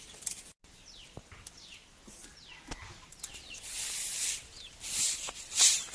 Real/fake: real